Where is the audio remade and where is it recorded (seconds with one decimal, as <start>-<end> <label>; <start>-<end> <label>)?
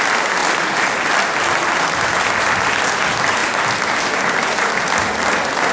0.0-5.7 recorded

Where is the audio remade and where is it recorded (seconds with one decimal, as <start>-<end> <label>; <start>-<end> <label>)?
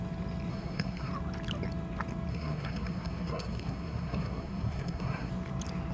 0.0-0.5 recorded; 0.5-1.1 remade; 1.1-2.3 recorded; 2.3-5.3 remade; 5.3-5.9 recorded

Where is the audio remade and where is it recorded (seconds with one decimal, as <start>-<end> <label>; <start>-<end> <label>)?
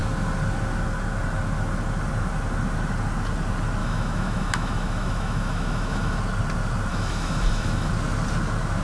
0.0-3.8 recorded; 3.8-6.2 remade; 6.2-6.9 recorded; 6.9-7.9 remade; 7.9-8.8 recorded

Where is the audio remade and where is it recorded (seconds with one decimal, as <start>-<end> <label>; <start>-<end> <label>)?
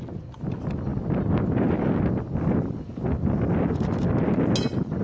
0.0-5.0 recorded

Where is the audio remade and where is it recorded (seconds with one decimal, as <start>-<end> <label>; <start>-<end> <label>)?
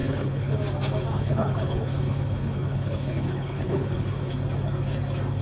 0.0-0.6 remade; 0.6-1.1 recorded; 1.1-4.3 remade; 4.3-5.4 recorded